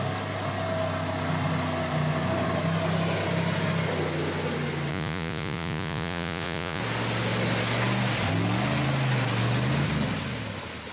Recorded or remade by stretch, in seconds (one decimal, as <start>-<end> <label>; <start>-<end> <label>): 0.0-4.9 recorded; 4.9-6.8 remade; 6.8-10.9 recorded